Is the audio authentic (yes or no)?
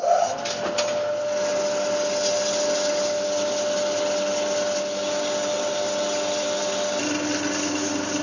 yes